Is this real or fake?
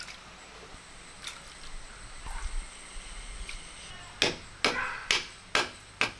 real